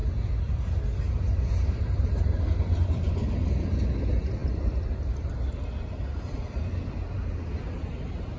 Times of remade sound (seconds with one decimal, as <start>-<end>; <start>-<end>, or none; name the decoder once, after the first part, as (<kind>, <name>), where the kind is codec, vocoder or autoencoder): none